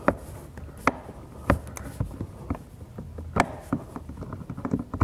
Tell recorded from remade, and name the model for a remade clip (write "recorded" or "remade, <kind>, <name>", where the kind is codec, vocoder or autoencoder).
recorded